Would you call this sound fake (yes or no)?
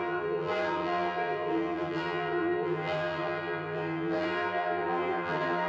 yes